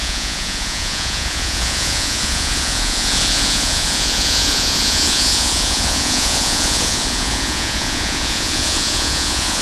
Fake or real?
fake